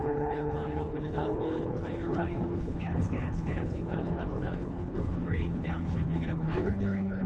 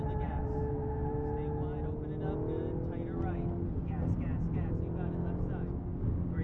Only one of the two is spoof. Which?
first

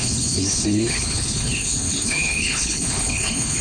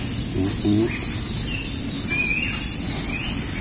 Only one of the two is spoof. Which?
first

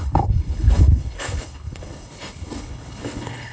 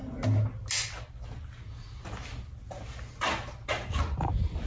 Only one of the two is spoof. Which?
first